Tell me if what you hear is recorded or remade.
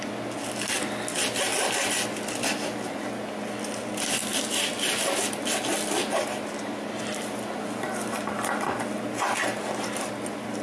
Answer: recorded